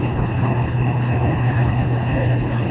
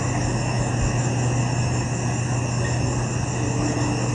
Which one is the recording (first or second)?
second